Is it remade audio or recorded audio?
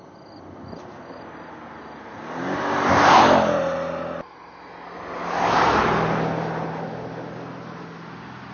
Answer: recorded